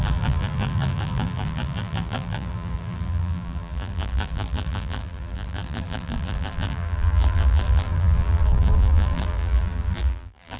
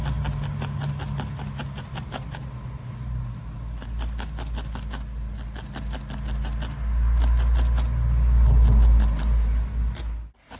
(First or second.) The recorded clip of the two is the second